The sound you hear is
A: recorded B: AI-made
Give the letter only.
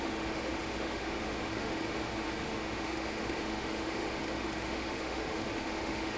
B